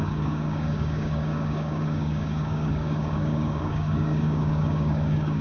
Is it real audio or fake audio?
fake